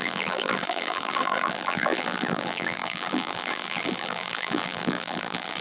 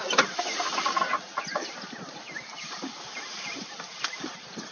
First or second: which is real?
second